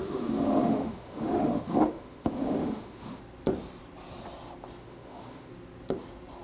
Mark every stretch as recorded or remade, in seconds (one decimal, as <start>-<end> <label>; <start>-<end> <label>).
0.0-3.2 remade; 3.2-4.8 recorded; 4.8-5.5 remade; 5.5-6.4 recorded